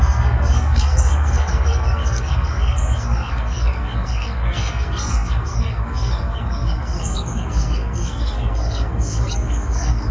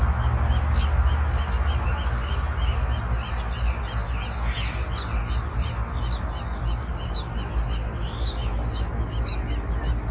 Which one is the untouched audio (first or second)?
second